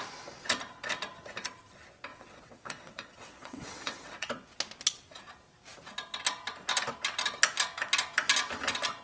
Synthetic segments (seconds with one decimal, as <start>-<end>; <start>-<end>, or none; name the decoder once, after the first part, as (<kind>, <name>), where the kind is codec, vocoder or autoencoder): 2.1-4.3 (vocoder, WaveNeXt)